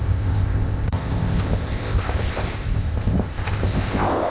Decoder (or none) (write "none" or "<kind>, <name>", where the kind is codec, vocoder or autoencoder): codec, ZipCodec